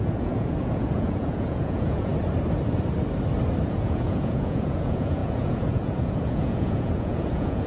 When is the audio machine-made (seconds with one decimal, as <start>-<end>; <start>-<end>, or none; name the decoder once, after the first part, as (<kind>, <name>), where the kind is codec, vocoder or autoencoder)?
0.0-2.1 (vocoder, Vocos); 3.7-7.7